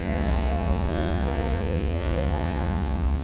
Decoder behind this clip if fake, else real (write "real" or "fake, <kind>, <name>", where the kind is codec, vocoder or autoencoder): fake, vocoder, Vocos